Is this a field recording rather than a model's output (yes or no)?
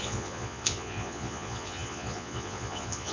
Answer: no